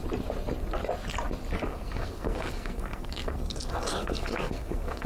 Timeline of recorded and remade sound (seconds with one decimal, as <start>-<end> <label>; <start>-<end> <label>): 0.0-1.7 recorded; 1.7-5.1 remade